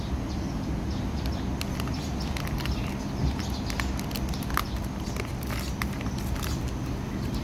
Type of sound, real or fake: real